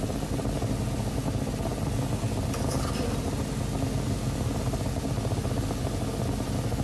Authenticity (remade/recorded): recorded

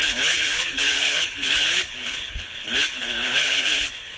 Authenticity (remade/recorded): remade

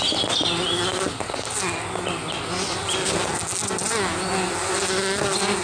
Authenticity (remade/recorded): recorded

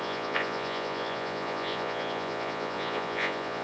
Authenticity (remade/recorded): remade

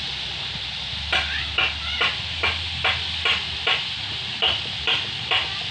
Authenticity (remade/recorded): recorded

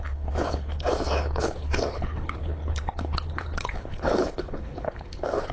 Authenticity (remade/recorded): remade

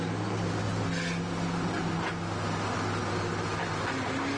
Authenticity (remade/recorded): recorded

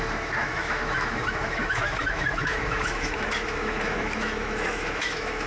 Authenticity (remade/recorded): remade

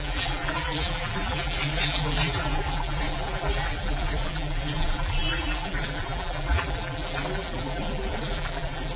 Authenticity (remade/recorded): remade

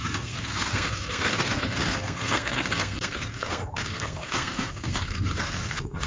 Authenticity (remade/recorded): remade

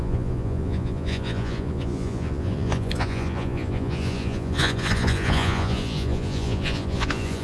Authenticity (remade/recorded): remade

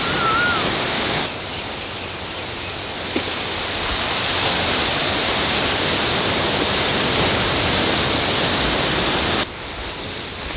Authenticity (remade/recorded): recorded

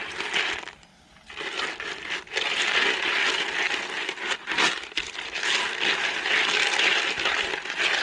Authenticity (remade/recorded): recorded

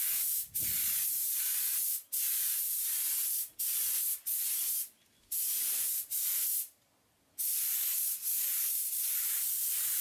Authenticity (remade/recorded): recorded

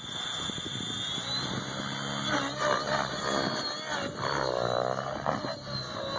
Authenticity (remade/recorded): recorded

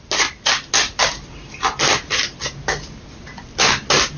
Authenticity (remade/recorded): recorded